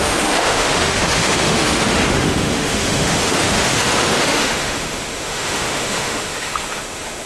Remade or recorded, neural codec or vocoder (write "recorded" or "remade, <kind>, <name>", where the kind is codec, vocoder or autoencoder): remade, autoencoder, DAC-VAE